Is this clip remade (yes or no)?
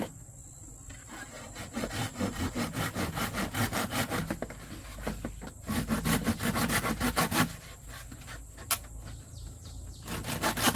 no